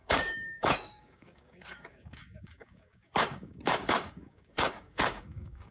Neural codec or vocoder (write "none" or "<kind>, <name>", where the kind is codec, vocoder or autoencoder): codec, DAC